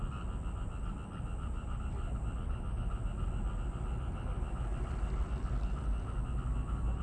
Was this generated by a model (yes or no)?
no